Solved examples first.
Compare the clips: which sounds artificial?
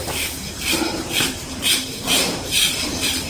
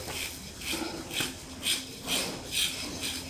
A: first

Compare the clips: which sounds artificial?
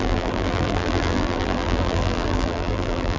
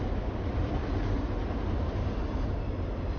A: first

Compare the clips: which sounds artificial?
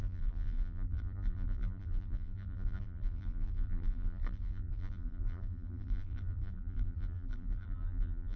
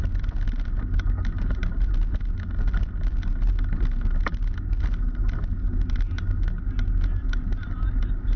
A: first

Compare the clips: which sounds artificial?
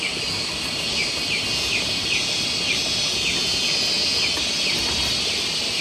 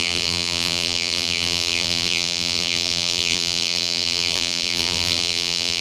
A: second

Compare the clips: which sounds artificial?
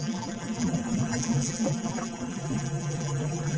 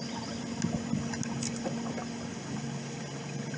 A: first